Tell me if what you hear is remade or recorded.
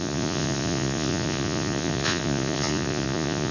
remade